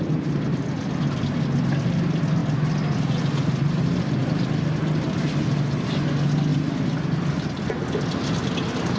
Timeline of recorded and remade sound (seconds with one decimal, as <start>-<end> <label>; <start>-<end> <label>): 0.0-9.0 recorded

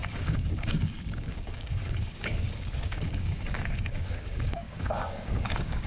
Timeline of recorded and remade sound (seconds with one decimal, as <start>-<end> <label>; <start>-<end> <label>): 0.0-5.9 remade